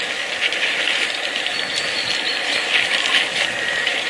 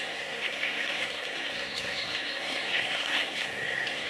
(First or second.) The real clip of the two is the first